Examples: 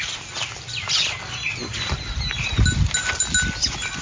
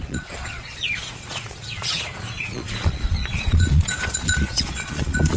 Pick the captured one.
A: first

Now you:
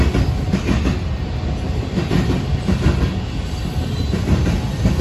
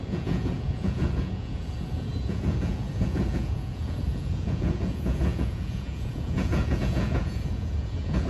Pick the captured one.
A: first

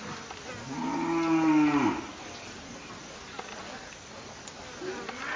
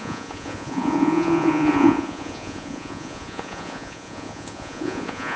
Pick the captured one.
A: first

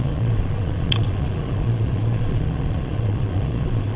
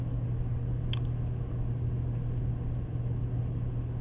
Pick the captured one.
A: second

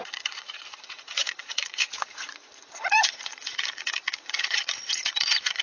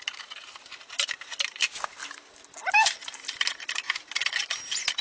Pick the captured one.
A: second